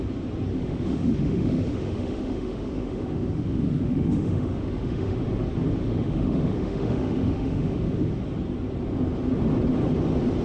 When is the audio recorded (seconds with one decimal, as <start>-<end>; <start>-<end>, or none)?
0.0-0.5; 5.2-5.8; 8.1-10.4